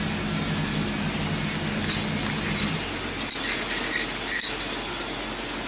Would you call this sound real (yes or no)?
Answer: yes